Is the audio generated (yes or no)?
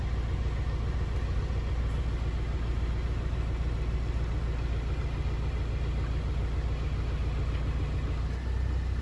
no